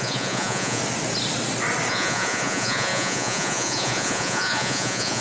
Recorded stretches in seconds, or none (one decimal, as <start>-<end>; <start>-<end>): 0.8-1.9